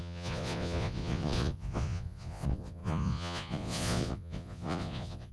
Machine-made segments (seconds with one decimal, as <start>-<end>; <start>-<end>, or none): 0.0-5.3